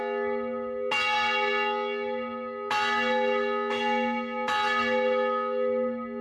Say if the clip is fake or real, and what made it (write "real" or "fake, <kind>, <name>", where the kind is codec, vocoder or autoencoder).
real